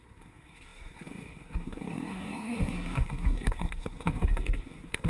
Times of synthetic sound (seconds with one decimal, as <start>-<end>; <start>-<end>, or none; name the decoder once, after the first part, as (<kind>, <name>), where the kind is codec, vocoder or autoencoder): 0.0-5.1 (codec, SNAC)